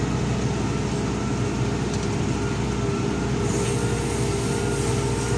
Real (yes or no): yes